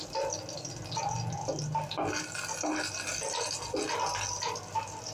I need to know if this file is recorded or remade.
recorded